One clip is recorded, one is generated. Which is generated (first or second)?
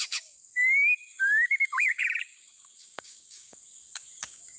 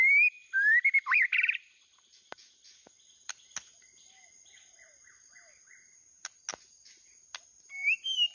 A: first